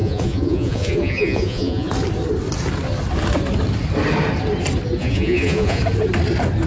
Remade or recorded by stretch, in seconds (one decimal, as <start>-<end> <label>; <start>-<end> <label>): 0.0-1.9 remade; 1.9-5.0 recorded; 5.0-5.8 remade; 5.8-6.7 recorded